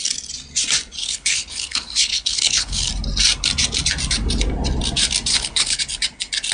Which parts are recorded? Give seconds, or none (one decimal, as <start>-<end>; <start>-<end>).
0.0-1.0; 2.9-5.3; 5.8-6.5